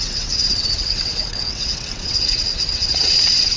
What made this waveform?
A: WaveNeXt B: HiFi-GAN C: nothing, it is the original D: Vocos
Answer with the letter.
A